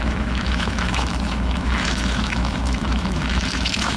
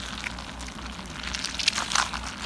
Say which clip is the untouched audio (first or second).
second